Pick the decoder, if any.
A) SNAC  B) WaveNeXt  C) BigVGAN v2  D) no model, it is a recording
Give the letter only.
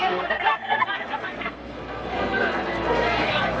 A